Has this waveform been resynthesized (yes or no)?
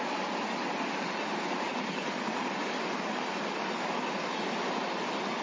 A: no